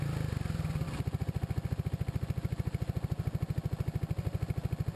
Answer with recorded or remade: recorded